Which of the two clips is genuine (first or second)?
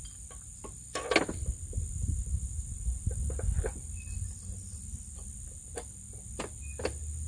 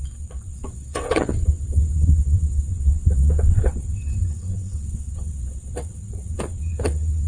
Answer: first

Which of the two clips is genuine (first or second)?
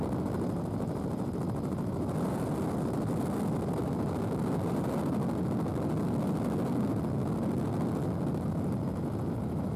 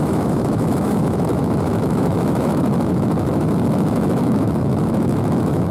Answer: first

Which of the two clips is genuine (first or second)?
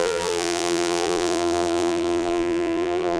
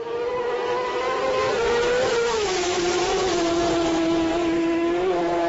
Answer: second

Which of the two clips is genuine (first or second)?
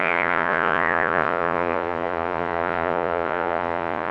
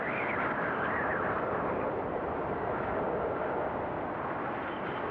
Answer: second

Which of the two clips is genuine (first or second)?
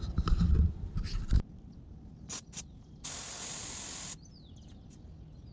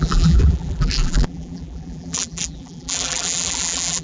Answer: first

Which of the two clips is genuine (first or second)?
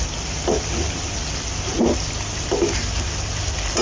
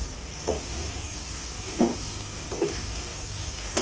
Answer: first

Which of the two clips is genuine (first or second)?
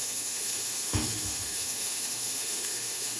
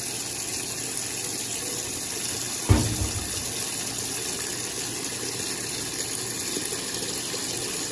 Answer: second